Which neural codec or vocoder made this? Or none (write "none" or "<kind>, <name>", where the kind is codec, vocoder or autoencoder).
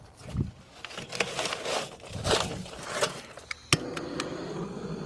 none